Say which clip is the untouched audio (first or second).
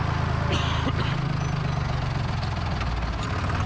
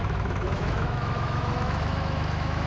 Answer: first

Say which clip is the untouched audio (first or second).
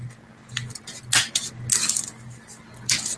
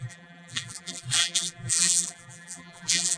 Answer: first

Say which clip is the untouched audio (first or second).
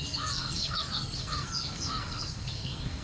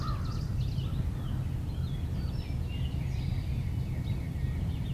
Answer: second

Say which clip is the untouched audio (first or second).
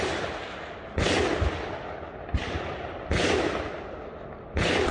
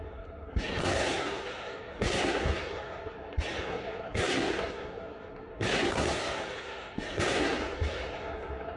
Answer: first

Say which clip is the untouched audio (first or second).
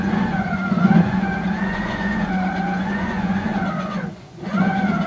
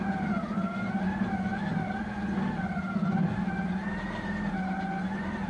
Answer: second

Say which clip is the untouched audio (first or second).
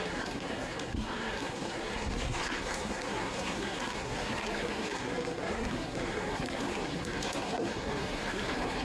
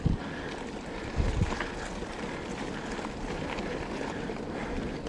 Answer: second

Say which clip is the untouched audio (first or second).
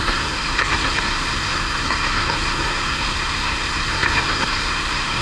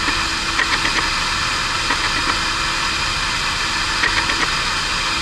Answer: second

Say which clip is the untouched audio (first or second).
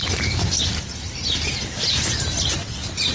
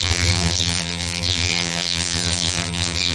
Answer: first